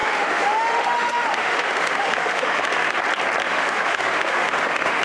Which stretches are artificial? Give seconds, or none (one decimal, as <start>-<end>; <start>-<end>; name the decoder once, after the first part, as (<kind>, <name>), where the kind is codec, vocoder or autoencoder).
0.0-3.0 (autoencoder, DAC-VAE); 3.4-5.0